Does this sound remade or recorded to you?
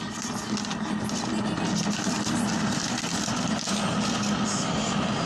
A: recorded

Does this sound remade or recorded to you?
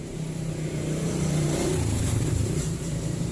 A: remade